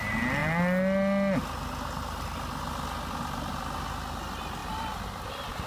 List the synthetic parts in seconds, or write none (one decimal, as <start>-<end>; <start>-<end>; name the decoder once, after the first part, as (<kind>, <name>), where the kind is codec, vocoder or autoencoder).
4.6-5.7 (vocoder, BigVGAN v2)